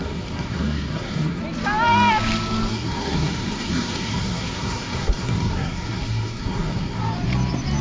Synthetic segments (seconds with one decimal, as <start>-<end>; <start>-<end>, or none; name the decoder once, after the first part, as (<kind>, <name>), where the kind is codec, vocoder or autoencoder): 0.0-1.4 (codec, SNAC); 2.7-7.0